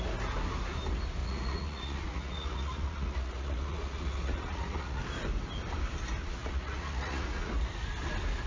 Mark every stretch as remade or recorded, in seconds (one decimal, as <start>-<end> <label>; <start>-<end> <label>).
0.0-1.2 recorded; 1.2-5.0 remade; 5.0-6.2 recorded; 6.2-7.5 remade; 7.5-8.5 recorded